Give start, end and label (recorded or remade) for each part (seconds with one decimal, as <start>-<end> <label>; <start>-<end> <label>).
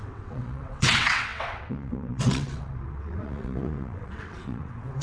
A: 0.0-5.0 remade